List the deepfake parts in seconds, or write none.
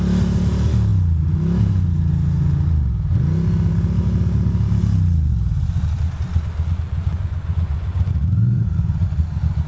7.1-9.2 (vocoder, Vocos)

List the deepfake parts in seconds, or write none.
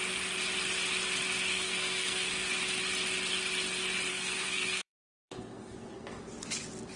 1.5-2.5 (codec, SNAC); 4.1-6.2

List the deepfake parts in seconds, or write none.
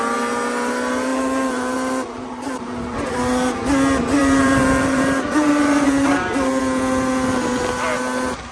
1.1-3.1 (vocoder, BigVGAN v2); 4.2-6.6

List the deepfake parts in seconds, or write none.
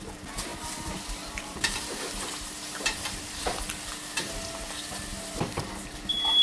0.5-4.3 (vocoder, BigVGAN v2); 5.1-5.8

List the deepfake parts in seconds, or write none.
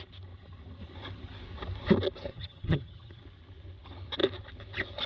2.3-3.2 (vocoder, HiFi-GAN)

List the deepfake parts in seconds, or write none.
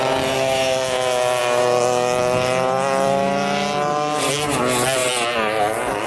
none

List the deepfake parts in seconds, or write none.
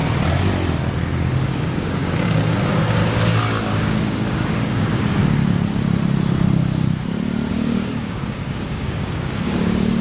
1.5-3.0 (codec, DAC); 3.6-5.2; 7.5-10.0